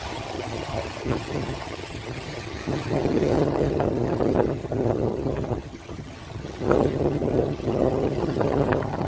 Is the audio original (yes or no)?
no